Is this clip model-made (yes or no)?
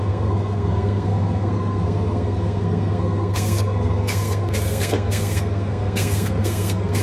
yes